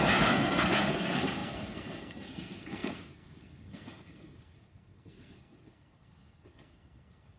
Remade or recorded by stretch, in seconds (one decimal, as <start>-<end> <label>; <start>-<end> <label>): 0.0-7.4 remade